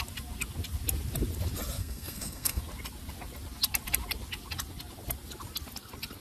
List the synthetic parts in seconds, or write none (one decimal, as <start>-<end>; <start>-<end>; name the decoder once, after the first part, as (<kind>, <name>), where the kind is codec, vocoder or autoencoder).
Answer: 1.8-2.6 (codec, SNAC)